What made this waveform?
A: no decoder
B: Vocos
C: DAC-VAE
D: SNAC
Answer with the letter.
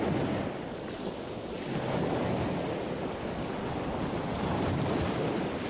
A